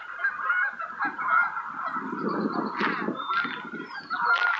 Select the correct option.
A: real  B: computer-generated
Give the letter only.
A